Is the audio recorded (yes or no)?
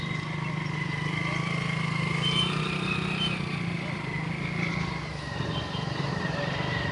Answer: yes